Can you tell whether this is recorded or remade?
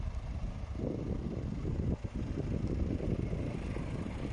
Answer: recorded